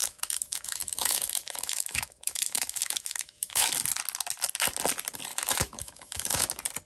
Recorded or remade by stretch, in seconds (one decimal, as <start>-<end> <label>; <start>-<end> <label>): 0.0-3.7 remade; 3.7-5.3 recorded; 5.3-6.5 remade; 6.5-6.9 recorded